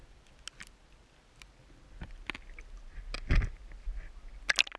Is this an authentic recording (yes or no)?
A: yes